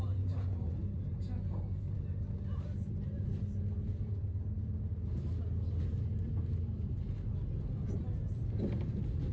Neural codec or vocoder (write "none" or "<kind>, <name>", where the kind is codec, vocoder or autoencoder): none